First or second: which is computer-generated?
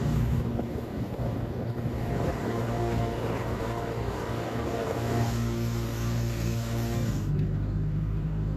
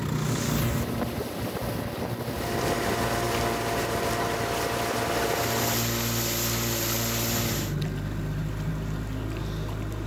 first